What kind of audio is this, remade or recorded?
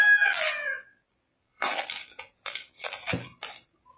remade